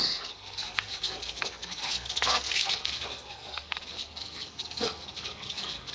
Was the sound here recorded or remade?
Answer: remade